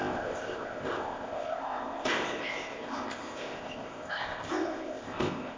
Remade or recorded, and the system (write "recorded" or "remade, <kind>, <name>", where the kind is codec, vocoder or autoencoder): remade, codec, ZipCodec